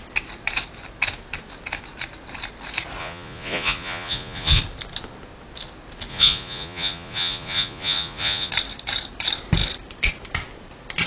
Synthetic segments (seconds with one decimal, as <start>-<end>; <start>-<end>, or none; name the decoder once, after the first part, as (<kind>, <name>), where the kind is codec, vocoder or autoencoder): 3.0-4.6 (vocoder, Vocos); 6.1-8.5